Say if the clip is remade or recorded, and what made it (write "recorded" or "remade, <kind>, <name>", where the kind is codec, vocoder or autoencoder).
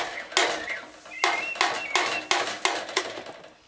recorded